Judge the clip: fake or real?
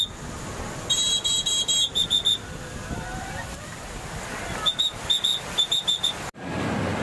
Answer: real